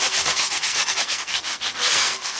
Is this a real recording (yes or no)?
no